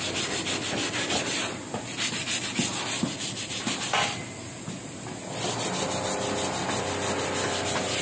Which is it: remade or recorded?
recorded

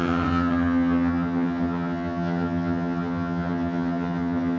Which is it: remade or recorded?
remade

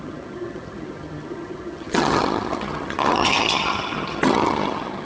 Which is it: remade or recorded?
remade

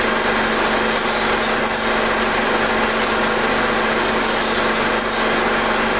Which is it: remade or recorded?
recorded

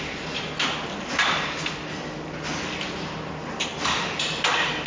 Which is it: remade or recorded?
recorded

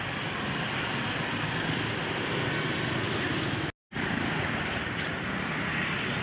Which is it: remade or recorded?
recorded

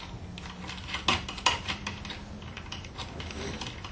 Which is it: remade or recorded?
recorded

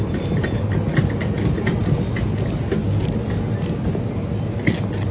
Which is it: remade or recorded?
recorded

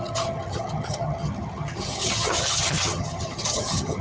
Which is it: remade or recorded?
remade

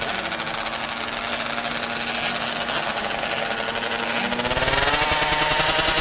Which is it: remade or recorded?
recorded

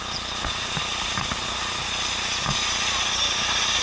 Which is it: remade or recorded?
recorded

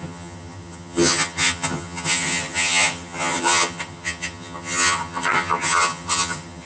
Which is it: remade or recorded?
remade